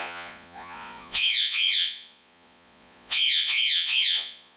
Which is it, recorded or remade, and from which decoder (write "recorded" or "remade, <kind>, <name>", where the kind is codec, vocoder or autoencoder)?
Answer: remade, vocoder, Vocos